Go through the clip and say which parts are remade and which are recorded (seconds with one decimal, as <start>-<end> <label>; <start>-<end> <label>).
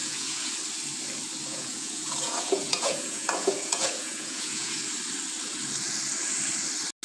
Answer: 0.0-0.5 remade; 0.5-1.5 recorded; 1.5-4.8 remade; 4.8-7.0 recorded